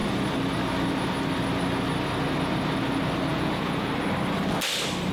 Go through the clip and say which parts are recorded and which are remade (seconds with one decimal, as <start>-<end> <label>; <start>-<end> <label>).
0.0-3.3 recorded; 3.3-3.9 remade; 3.9-5.1 recorded